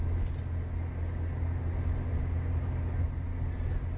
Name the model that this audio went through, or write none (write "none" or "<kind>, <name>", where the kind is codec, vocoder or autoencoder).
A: none